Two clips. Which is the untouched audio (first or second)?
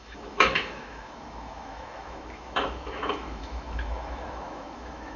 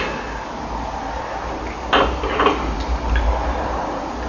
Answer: second